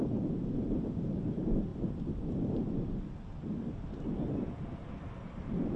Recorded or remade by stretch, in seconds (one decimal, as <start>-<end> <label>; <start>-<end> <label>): 0.0-5.8 recorded